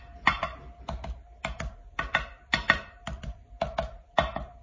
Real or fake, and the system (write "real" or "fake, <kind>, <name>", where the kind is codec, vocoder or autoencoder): fake, vocoder, BigVGAN v2